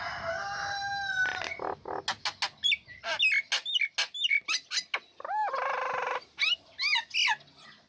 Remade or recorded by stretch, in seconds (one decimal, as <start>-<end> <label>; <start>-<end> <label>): 0.0-7.9 recorded